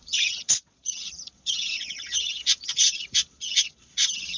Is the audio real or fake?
fake